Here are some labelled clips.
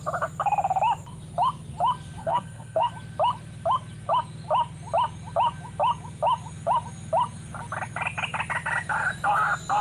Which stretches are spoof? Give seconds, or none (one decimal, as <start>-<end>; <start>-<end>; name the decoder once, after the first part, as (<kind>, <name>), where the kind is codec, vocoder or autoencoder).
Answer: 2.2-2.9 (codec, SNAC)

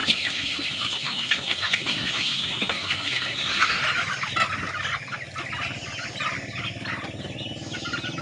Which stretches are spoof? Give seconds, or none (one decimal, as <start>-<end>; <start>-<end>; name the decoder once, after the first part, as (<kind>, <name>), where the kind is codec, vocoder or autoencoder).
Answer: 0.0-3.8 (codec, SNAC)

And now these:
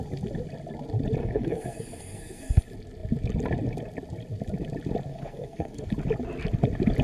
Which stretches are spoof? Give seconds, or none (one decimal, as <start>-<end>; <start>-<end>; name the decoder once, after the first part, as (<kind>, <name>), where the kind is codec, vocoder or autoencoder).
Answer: 1.2-2.6 (codec, SNAC); 5.1-5.9

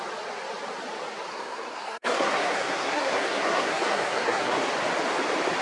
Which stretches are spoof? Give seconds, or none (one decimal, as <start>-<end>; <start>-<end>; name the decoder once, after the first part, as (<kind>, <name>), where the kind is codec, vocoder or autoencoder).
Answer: 1.3-4.7 (codec, SNAC)

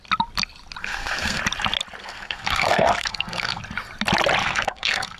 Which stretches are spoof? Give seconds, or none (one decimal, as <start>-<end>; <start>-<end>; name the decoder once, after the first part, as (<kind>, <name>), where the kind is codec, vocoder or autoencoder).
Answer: 0.8-1.4 (codec, SNAC); 2.0-3.6; 4.4-5.2

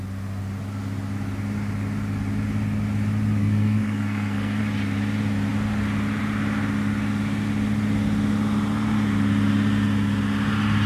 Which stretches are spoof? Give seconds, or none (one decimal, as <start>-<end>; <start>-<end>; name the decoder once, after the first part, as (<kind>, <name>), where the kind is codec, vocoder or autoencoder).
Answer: 3.4-4.6 (codec, SNAC)

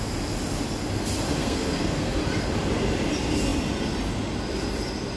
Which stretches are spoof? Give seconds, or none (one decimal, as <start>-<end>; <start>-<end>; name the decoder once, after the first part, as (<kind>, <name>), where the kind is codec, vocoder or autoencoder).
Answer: 1.4-2.2 (codec, SNAC)

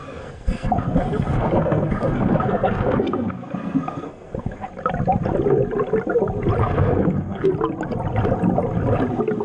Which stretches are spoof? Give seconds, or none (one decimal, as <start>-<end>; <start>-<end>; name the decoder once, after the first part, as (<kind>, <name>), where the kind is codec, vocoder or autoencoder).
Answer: 0.0-4.7 (codec, SNAC); 6.6-7.5